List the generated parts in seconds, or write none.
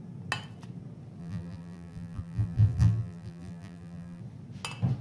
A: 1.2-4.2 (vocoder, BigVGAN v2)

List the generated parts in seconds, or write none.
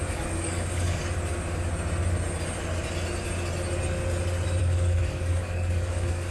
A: 0.0-1.0 (codec, DAC); 4.6-6.3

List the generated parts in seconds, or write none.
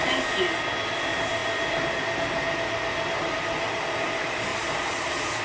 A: 4.5-5.4 (vocoder, BigVGAN v2)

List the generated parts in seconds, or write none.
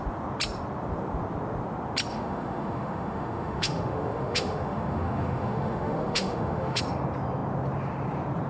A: 2.1-6.8 (autoencoder, DAC-VAE)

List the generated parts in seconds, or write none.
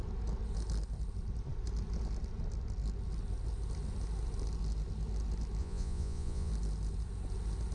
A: 5.6-6.5 (vocoder, Vocos)